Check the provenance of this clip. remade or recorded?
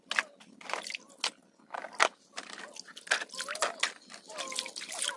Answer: recorded